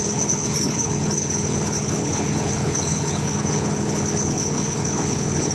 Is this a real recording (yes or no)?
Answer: no